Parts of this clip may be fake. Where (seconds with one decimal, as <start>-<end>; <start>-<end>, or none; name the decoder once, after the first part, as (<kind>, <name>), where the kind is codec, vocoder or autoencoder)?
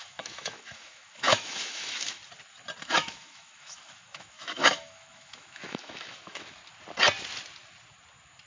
0.0-2.2 (autoencoder, DAC-VAE); 2.8-6.6